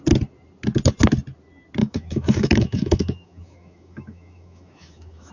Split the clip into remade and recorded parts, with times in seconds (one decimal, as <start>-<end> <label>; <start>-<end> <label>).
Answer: 0.0-1.8 recorded; 1.8-5.3 remade